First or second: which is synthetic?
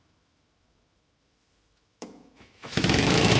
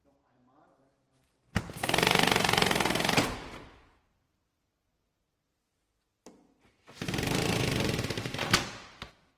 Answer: first